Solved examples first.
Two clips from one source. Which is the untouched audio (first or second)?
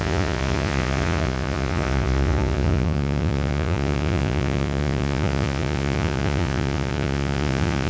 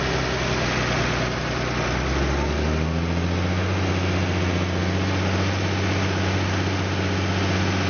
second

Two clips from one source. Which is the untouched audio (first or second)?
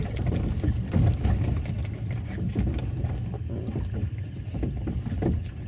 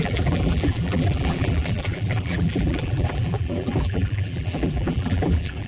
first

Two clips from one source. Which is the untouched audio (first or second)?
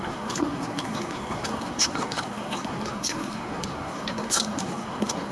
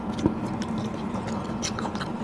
second